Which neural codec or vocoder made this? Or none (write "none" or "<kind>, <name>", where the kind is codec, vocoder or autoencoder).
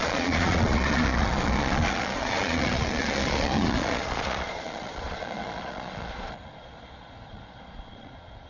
vocoder, Vocos